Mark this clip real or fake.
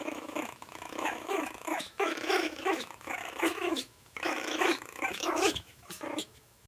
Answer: fake